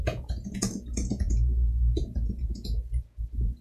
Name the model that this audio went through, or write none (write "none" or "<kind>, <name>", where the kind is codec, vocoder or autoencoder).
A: vocoder, Vocos